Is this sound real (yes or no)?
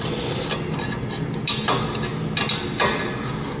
yes